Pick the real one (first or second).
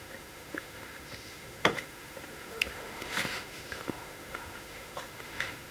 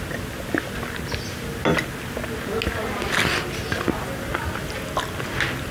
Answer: second